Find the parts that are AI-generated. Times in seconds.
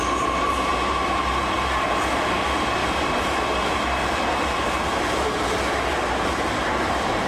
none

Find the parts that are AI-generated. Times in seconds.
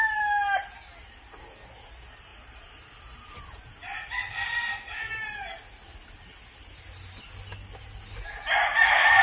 none